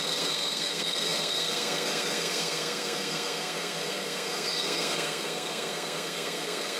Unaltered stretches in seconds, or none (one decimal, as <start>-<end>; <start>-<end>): none